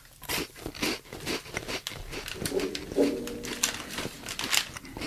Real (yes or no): yes